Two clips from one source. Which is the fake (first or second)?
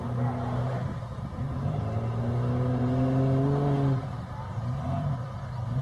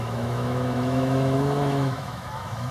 second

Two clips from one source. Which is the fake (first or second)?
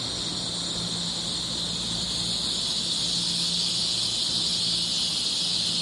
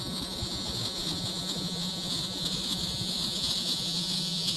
second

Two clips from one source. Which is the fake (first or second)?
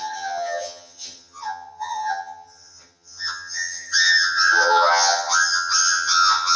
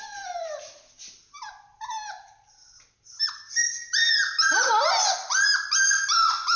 first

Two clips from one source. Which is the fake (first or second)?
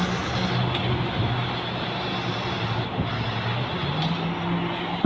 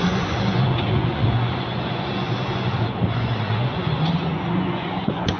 second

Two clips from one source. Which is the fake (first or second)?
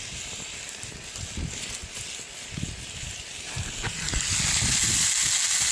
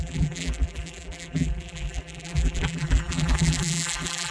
second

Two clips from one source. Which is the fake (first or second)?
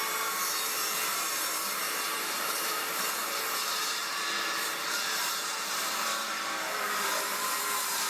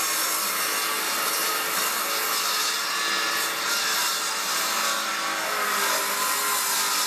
first